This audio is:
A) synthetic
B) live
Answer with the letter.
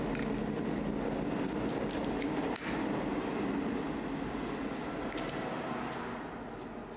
B